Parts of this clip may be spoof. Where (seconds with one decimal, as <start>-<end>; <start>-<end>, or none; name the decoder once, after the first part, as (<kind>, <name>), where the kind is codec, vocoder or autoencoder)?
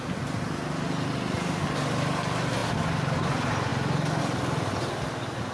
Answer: none